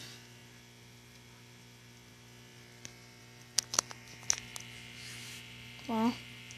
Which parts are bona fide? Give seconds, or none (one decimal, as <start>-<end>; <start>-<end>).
0.0-6.6